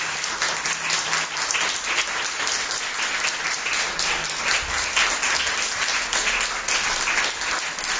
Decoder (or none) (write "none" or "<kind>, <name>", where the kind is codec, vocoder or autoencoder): none